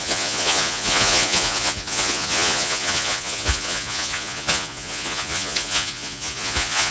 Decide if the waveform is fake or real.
fake